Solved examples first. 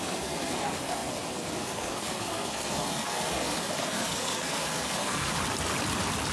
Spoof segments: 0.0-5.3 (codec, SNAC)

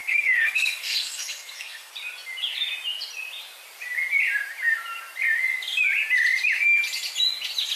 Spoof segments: 0.0-1.9 (codec, SNAC)

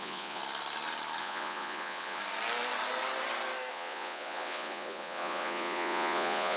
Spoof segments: 0.0-0.4 (vocoder, Vocos); 1.2-2.2; 3.7-6.6

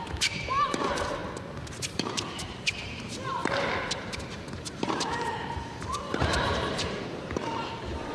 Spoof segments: 0.0-1.2 (vocoder, BigVGAN v2); 1.7-3.4; 4.5-8.1

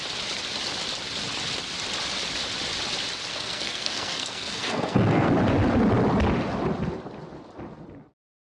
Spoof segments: 3.3-5.3 (codec, SNAC)

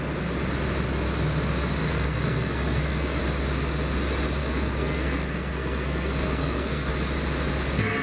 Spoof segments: 1.8-3.2 (codec, SNAC); 4.4-6.9

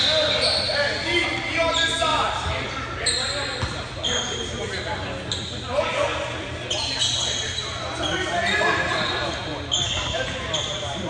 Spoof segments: none